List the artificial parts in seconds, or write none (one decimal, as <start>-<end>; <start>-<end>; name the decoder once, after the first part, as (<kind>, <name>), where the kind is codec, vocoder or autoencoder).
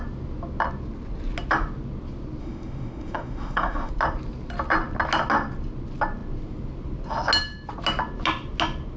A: 2.4-3.9 (autoencoder, DAC-VAE)